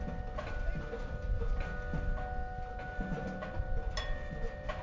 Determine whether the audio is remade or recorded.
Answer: recorded